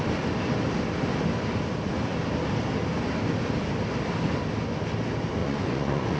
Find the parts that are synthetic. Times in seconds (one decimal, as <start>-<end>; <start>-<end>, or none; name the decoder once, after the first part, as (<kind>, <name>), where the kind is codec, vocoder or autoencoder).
5.4-6.2 (vocoder, Vocos)